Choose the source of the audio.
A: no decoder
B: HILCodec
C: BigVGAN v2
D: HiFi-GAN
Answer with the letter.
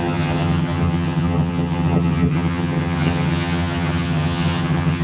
D